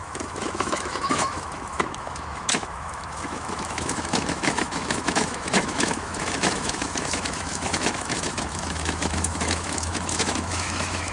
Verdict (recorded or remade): remade